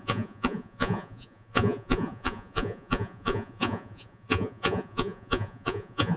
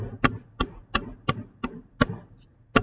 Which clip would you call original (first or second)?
second